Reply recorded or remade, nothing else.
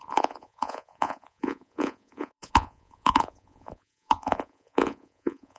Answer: remade